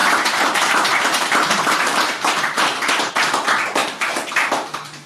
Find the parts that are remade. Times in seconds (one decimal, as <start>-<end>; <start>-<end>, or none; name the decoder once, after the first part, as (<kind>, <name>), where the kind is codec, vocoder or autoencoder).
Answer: 0.0-3.1 (vocoder, BigVGAN v2)

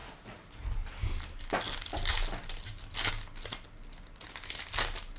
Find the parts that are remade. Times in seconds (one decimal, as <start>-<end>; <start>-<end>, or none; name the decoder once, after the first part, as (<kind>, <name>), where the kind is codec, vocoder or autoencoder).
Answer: none

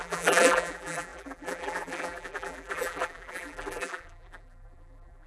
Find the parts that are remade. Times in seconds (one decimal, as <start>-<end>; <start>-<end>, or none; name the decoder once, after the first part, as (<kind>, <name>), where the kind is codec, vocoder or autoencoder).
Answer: 0.0-5.3 (vocoder, BigVGAN v2)

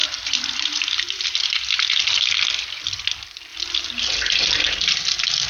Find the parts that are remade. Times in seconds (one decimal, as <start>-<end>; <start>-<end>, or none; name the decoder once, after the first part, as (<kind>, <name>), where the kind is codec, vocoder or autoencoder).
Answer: none